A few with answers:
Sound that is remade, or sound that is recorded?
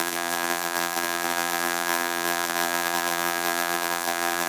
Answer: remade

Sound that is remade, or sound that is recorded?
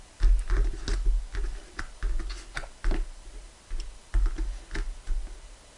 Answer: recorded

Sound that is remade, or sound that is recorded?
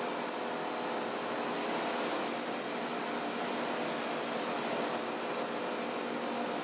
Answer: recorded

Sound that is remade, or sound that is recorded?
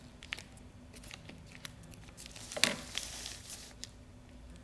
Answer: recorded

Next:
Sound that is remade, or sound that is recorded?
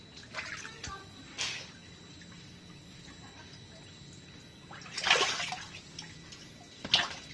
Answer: recorded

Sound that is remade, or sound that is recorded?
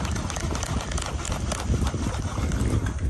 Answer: remade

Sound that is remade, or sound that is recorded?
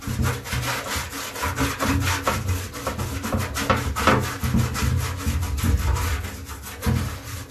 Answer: recorded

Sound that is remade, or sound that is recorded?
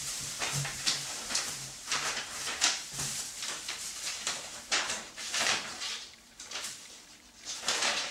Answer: remade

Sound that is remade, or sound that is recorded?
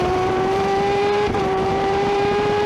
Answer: remade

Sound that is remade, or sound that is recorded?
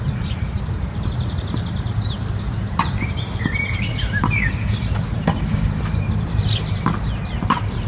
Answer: remade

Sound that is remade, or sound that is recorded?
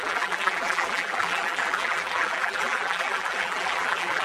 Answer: remade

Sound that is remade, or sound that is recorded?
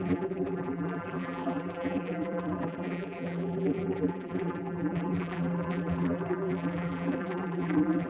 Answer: remade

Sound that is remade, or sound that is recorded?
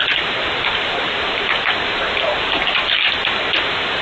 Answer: remade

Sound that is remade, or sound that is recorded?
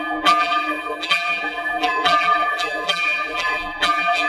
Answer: remade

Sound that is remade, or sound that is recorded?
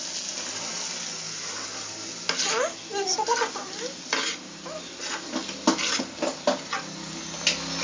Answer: recorded